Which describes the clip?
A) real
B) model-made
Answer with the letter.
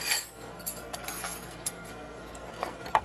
B